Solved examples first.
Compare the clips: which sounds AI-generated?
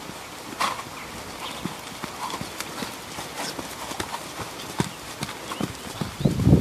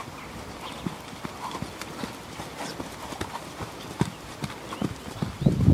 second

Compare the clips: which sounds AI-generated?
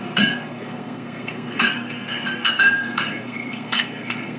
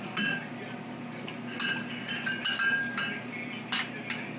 first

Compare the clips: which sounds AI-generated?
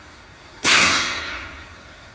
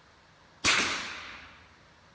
first